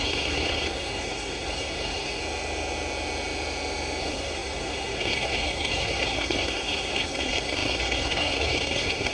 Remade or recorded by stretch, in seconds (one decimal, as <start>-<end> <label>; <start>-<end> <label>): 0.0-2.2 remade; 2.2-4.0 recorded; 4.0-9.1 remade